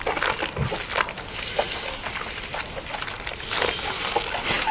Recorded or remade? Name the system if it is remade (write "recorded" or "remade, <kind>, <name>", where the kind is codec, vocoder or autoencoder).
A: recorded